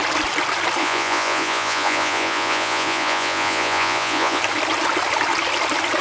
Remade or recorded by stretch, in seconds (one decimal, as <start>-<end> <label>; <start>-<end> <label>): 0.0-0.8 recorded; 0.8-4.4 remade; 4.4-6.0 recorded